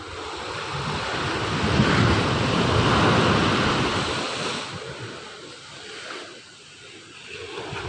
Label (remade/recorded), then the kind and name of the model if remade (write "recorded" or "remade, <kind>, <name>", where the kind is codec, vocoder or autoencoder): recorded